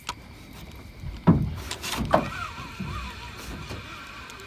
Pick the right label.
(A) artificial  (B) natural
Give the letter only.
B